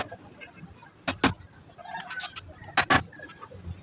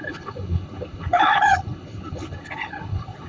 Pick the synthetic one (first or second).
second